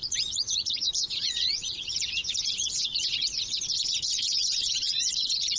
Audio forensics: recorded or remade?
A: remade